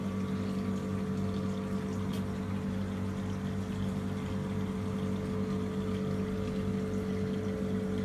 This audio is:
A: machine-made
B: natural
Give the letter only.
B